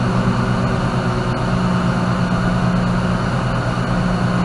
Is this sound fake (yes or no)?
no